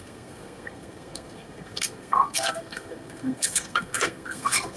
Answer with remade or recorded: remade